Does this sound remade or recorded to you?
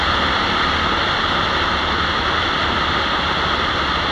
recorded